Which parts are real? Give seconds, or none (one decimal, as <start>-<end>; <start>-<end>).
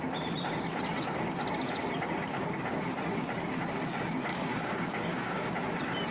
0.0-4.3; 5.5-6.1